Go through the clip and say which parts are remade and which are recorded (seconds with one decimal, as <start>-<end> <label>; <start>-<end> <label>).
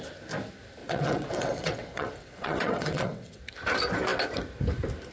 0.0-0.8 recorded; 0.8-3.4 remade; 3.4-5.1 recorded